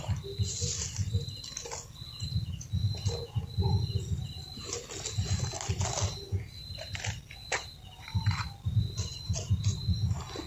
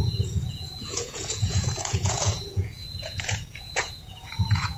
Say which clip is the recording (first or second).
first